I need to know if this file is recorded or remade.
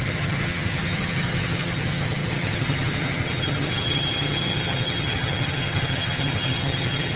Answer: remade